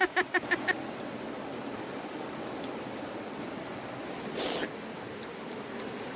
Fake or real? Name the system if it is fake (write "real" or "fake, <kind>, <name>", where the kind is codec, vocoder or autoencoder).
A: real